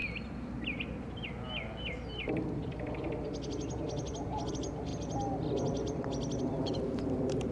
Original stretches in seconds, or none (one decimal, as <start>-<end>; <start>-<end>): 0.0-4.5; 4.9-6.4